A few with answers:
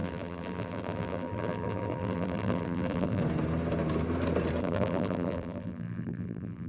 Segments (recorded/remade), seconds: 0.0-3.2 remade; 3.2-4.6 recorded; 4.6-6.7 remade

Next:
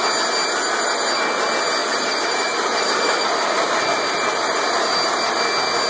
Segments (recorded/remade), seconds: 0.0-1.8 recorded; 1.8-5.3 remade; 5.3-5.9 recorded